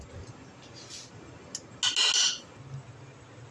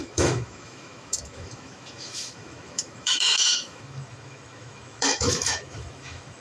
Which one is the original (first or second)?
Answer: first